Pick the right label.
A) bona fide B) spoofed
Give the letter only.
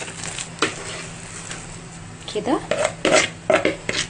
A